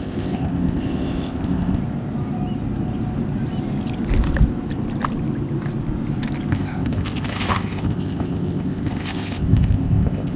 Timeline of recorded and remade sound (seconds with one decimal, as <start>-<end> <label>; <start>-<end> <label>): 0.0-1.8 remade; 1.8-6.5 recorded; 6.5-10.4 remade